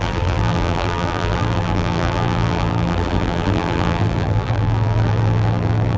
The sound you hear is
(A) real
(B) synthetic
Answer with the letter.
B